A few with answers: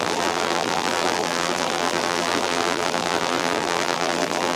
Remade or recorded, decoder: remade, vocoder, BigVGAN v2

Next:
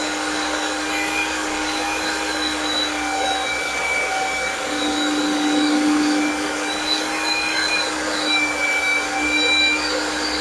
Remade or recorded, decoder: remade, codec, DAC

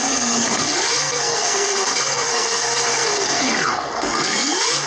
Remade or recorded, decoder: remade, codec, SNAC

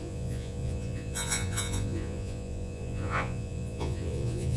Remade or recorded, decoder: remade, vocoder, Vocos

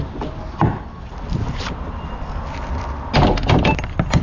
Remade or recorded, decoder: recorded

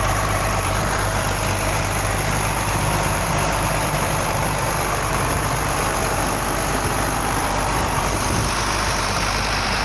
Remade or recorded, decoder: remade, vocoder, BigVGAN v2